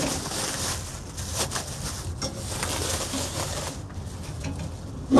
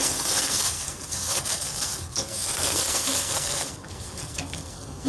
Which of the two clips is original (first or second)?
first